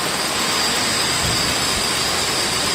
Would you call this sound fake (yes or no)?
no